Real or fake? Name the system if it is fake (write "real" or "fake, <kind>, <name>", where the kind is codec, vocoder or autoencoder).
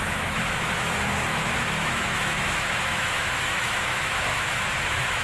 fake, autoencoder, DAC-VAE